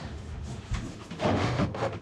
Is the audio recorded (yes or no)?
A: no